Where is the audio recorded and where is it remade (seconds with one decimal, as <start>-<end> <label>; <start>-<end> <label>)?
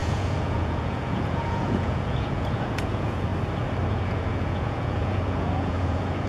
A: 0.0-3.3 remade; 3.3-3.9 recorded; 3.9-6.3 remade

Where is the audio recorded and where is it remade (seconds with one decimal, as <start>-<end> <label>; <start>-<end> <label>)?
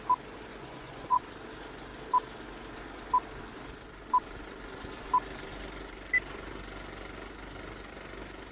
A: 0.0-0.5 recorded; 0.5-1.2 remade; 1.2-8.5 recorded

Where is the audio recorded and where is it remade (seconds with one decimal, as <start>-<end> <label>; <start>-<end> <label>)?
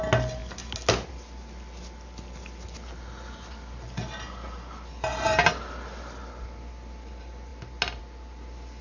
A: 0.0-8.8 recorded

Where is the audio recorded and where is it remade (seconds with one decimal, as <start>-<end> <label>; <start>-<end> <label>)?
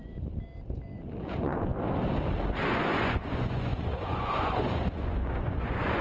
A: 0.0-1.2 recorded; 1.2-1.7 remade; 1.7-2.6 recorded; 2.6-6.0 remade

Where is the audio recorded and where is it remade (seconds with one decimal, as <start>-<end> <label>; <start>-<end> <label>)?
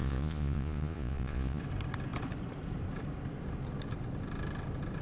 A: 0.0-1.6 remade; 1.6-5.0 recorded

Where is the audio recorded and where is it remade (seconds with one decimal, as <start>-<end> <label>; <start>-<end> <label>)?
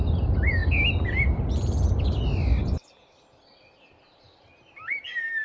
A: 0.0-5.4 recorded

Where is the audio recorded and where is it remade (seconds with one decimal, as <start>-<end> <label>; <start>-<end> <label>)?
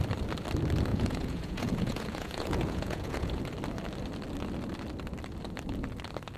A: 0.0-0.9 recorded; 0.9-3.4 remade; 3.4-6.4 recorded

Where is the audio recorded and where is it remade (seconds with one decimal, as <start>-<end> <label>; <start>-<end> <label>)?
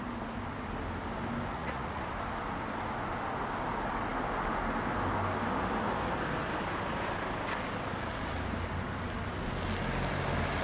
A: 0.0-1.5 recorded; 1.5-2.0 remade; 2.0-10.6 recorded